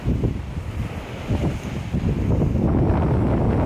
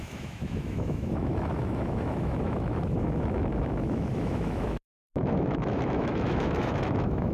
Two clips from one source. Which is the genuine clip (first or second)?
first